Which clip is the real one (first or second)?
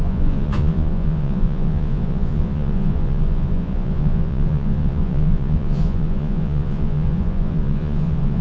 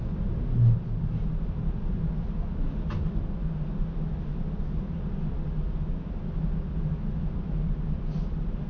second